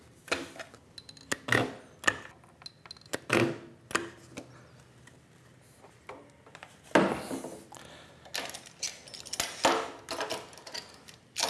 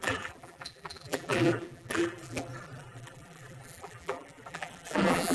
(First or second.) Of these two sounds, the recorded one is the first